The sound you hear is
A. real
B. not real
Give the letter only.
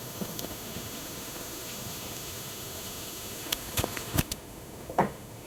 B